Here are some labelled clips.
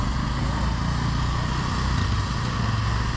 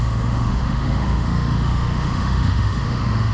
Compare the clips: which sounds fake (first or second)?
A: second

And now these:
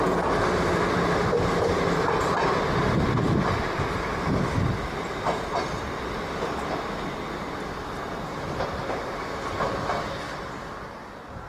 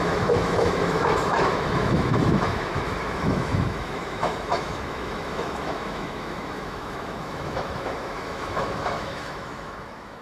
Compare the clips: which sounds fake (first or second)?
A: second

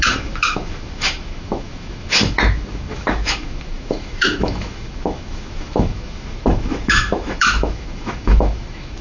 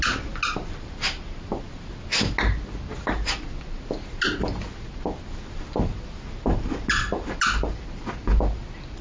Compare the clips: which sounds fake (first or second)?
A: first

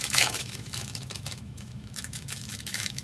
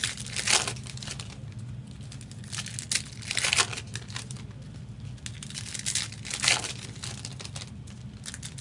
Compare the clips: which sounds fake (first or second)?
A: first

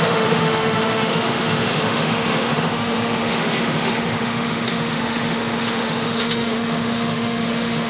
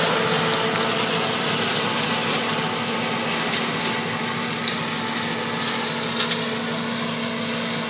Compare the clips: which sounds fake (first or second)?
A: first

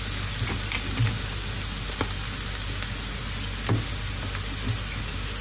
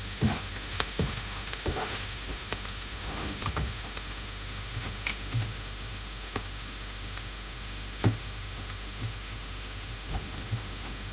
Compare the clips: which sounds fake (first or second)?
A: second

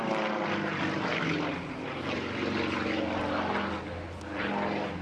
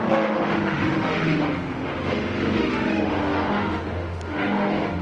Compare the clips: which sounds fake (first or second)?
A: second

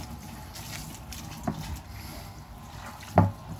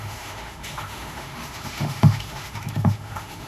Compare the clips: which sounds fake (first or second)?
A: second